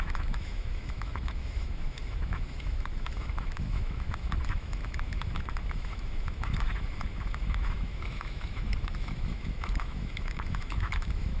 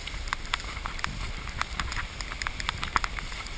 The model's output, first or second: first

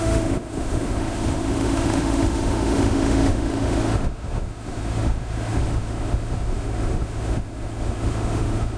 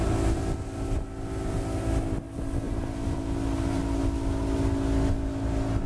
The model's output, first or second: first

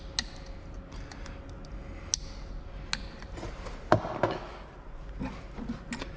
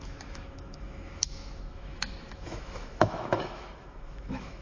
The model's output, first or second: second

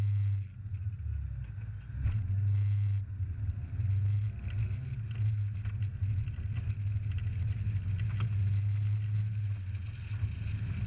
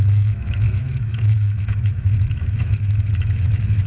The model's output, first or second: second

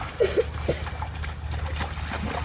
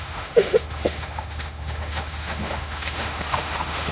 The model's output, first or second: second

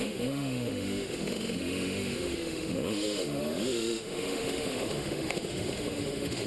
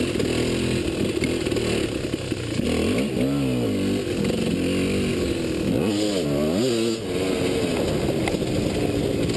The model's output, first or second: first